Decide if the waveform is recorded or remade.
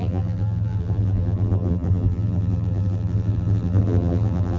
remade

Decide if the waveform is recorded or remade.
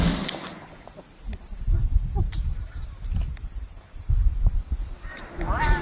recorded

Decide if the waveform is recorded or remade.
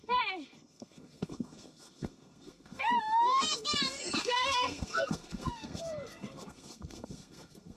remade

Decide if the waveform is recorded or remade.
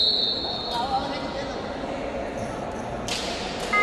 recorded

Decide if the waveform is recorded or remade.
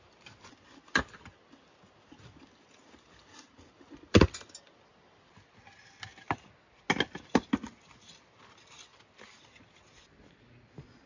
recorded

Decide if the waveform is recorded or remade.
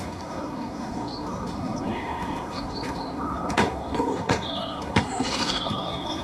remade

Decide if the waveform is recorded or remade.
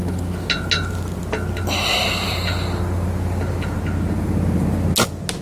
recorded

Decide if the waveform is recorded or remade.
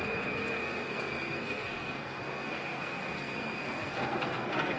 remade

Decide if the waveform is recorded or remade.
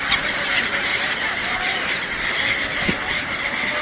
recorded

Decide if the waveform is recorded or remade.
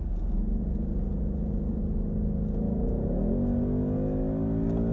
recorded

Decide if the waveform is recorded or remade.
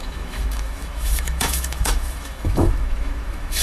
remade